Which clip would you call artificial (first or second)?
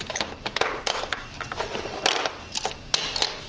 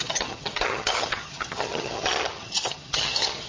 second